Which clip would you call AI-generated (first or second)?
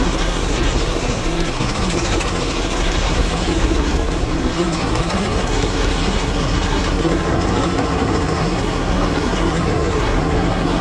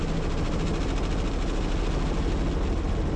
first